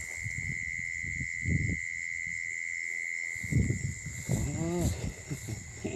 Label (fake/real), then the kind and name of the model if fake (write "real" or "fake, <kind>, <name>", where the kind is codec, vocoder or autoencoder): real